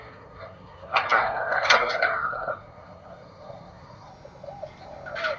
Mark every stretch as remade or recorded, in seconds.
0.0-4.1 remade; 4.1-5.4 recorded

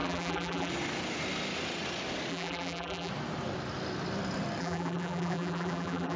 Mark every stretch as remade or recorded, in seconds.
0.0-0.7 remade; 0.7-2.3 recorded; 2.3-3.1 remade; 3.1-4.6 recorded; 4.6-6.2 remade

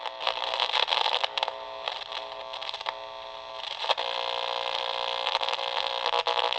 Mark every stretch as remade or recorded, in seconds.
0.0-6.6 recorded

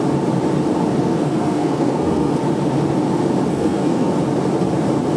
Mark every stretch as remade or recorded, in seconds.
0.0-1.0 recorded; 1.0-2.3 remade; 2.3-3.5 recorded; 3.5-4.1 remade; 4.1-5.2 recorded